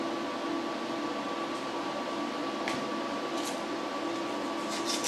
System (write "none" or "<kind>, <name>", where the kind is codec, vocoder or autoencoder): none